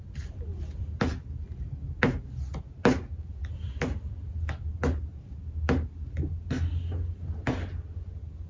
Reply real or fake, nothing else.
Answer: real